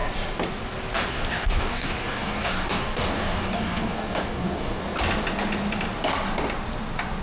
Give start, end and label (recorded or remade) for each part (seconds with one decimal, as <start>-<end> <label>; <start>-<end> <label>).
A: 0.0-1.1 recorded; 1.1-4.8 remade; 4.8-7.2 recorded